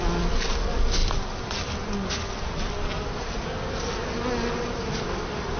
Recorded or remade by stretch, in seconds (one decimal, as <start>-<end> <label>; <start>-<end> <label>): 0.0-5.6 recorded